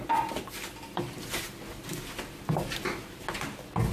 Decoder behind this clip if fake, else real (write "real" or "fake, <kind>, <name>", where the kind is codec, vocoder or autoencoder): real